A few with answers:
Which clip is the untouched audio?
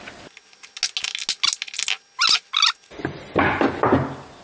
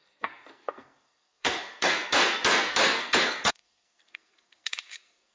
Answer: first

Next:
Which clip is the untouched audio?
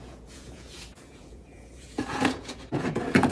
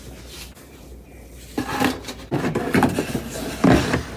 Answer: second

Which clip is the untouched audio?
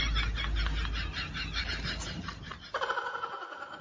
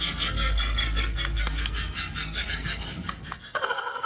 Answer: first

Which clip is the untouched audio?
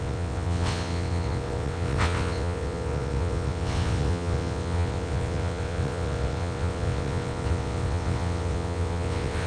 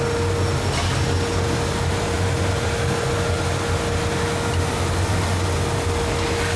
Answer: second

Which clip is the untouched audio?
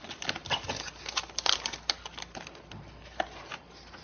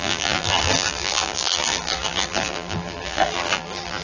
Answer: first